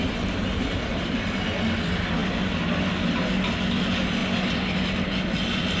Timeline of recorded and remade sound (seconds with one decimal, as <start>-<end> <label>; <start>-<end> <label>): 0.0-0.5 recorded; 0.5-1.1 remade; 1.1-5.8 recorded